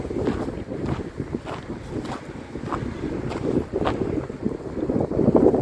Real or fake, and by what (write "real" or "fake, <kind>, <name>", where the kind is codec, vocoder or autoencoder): real